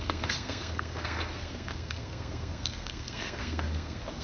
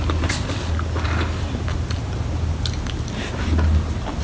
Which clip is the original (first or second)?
second